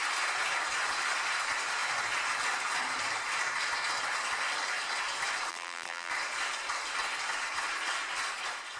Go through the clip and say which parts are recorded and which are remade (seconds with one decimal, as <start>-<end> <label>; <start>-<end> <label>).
0.0-5.5 recorded; 5.5-6.1 remade; 6.1-8.8 recorded